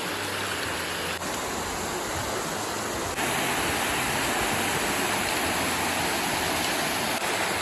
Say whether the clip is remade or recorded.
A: recorded